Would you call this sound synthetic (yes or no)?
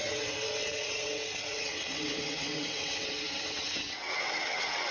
yes